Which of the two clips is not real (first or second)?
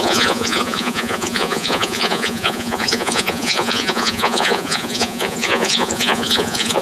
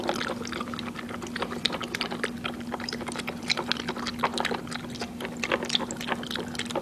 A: first